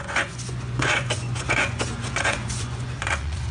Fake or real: fake